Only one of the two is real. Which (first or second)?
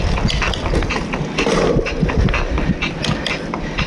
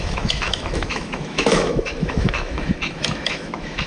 first